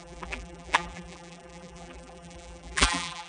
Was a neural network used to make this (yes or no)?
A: yes